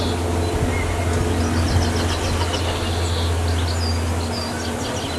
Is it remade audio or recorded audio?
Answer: recorded